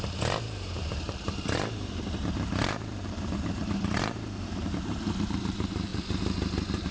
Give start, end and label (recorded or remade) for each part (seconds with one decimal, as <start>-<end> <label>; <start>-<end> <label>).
0.0-6.9 remade